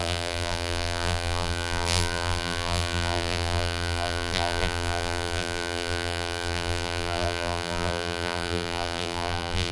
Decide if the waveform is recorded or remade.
remade